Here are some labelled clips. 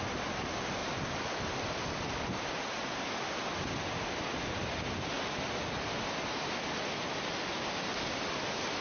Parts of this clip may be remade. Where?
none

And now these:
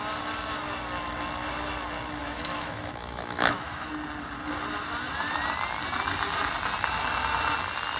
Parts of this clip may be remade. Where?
2.2-3.9 (autoencoder, DAC-VAE)

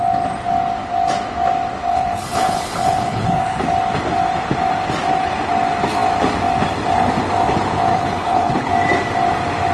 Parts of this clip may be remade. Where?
1.9-3.6 (codec, HILCodec); 7.9-8.7

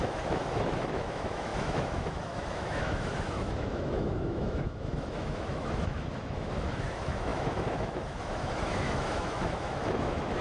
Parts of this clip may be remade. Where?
0.0-10.4 (autoencoder, DAC-VAE)